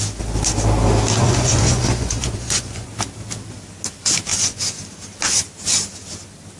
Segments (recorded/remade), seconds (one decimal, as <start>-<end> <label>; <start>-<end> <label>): 0.0-1.2 recorded; 1.2-2.9 remade; 2.9-4.3 recorded; 4.3-4.8 remade; 4.8-6.6 recorded